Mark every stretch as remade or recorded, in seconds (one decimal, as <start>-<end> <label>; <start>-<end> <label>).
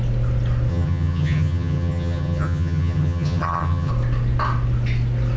0.0-0.7 recorded; 0.7-3.9 remade; 3.9-5.4 recorded